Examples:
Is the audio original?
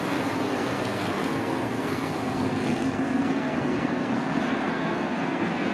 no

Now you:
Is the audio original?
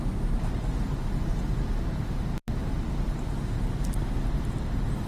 yes